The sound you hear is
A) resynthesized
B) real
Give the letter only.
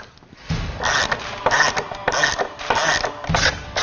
B